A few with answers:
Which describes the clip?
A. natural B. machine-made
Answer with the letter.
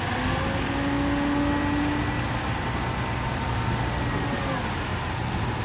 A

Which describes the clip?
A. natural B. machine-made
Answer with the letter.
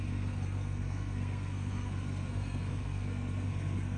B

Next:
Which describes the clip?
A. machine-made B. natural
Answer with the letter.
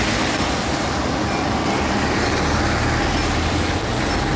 B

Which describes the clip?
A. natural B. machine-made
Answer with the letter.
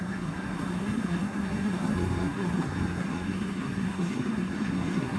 B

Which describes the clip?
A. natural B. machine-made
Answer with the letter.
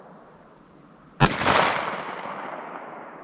A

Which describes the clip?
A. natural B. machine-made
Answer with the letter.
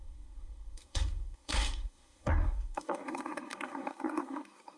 B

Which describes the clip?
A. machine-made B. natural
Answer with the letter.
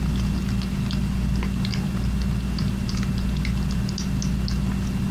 B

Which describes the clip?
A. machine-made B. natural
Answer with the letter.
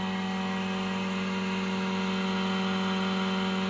B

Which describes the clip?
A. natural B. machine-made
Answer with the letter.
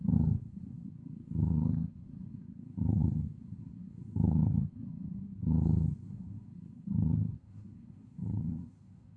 B